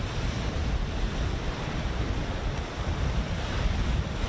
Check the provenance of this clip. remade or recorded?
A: remade